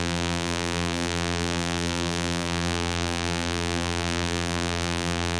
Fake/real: fake